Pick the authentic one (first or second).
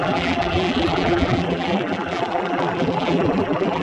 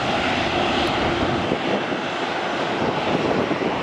second